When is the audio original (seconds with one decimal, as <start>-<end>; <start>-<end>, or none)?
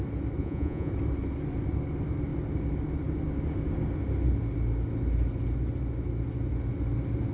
0.0-0.4; 0.9-7.3